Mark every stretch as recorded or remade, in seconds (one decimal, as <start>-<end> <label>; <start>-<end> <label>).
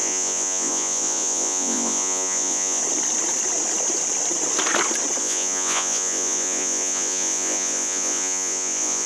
0.0-2.8 remade; 2.8-5.2 recorded; 5.2-9.1 remade